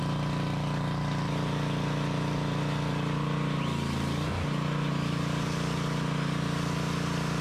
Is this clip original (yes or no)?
yes